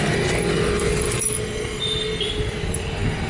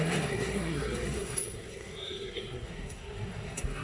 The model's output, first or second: second